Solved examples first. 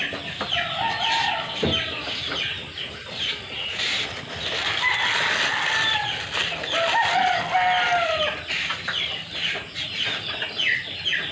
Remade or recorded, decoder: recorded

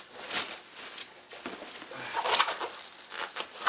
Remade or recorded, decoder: recorded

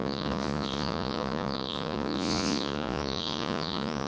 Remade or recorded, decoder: remade, vocoder, Vocos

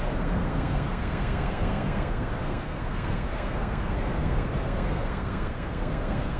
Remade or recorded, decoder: remade, codec, SNAC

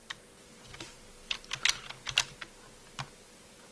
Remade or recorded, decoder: recorded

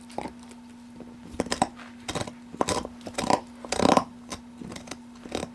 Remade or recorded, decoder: recorded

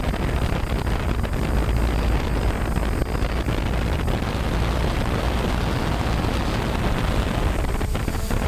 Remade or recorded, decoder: recorded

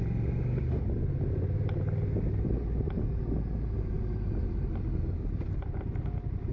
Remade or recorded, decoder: recorded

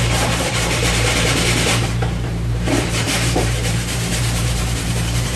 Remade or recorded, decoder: remade, vocoder, BigVGAN v2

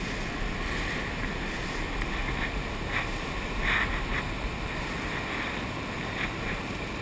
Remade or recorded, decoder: recorded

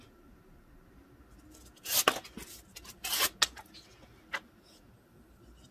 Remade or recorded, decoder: recorded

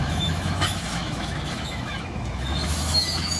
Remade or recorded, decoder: remade, autoencoder, DAC-VAE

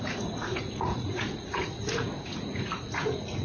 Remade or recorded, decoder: remade, vocoder, Vocos